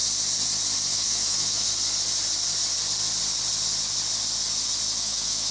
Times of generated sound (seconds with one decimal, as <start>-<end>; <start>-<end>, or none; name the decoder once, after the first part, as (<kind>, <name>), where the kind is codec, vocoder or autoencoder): 0.9-1.7 (autoencoder, DAC-VAE); 5.0-5.5